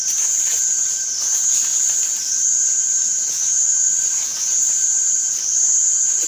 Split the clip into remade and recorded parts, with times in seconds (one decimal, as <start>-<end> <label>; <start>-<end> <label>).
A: 0.0-6.3 recorded